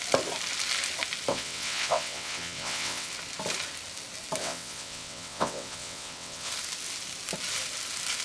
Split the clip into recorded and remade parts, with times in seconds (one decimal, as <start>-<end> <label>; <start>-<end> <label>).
0.0-1.3 recorded; 1.3-3.1 remade; 3.1-4.4 recorded; 4.4-6.5 remade; 6.5-8.2 recorded